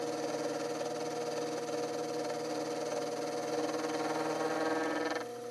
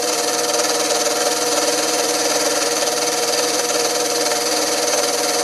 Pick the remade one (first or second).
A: second